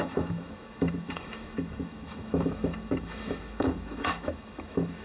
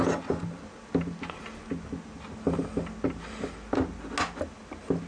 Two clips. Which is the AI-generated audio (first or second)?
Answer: first